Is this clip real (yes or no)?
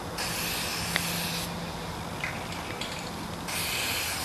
yes